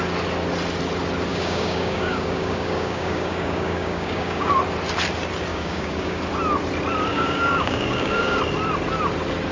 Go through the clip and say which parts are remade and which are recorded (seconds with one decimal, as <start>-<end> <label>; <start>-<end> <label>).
0.0-1.3 recorded; 1.3-4.5 remade; 4.5-5.5 recorded; 5.5-6.2 remade; 6.2-7.1 recorded; 7.1-8.4 remade; 8.4-9.5 recorded